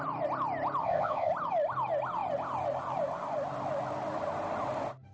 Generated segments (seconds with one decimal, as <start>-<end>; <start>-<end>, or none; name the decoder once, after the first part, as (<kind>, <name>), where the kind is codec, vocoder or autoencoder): 0.8-1.3 (codec, ZipCodec)